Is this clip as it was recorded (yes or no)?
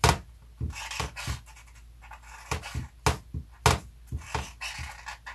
yes